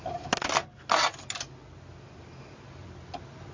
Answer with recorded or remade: recorded